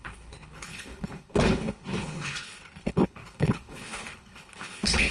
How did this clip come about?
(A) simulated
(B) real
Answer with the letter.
A